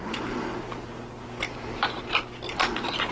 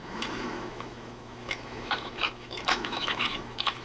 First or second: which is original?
first